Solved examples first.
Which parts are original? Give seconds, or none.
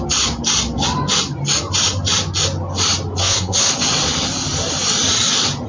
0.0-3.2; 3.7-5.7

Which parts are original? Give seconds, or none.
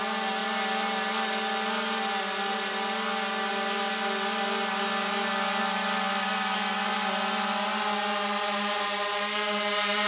0.0-10.1